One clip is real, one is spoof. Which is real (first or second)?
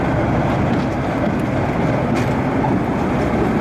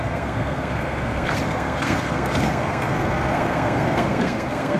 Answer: first